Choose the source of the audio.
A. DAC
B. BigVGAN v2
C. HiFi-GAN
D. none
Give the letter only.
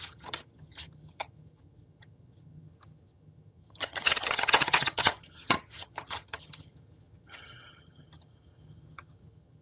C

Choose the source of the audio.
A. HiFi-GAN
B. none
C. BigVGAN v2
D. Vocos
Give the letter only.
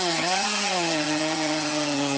A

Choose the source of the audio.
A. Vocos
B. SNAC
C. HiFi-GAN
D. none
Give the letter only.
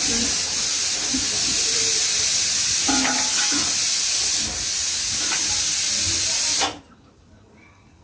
D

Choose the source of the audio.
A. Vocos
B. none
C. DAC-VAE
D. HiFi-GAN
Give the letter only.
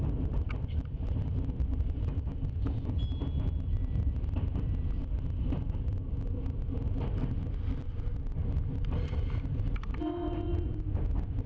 B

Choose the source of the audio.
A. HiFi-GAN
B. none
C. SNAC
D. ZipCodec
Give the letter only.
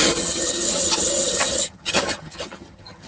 A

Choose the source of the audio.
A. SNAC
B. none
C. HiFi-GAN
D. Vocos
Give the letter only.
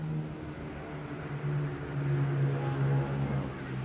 B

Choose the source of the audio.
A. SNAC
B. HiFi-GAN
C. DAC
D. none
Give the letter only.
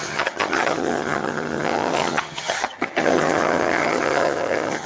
B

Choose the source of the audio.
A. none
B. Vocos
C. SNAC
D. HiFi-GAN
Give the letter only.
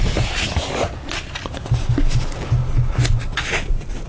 A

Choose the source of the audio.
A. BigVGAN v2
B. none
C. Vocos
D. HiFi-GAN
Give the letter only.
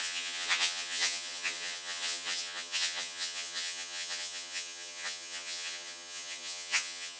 D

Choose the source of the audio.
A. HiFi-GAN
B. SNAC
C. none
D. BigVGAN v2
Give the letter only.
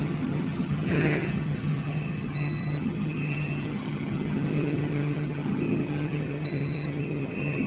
A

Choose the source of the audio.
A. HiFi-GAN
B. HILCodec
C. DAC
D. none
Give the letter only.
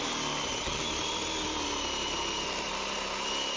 D